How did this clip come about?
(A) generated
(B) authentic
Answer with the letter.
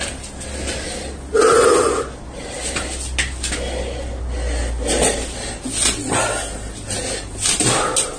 B